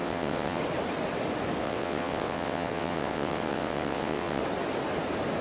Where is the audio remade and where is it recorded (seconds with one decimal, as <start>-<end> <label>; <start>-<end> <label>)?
0.0-0.6 remade; 0.6-1.6 recorded; 1.6-4.4 remade; 4.4-5.4 recorded